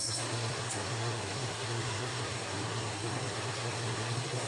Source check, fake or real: fake